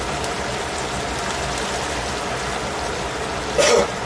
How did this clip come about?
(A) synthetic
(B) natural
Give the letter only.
B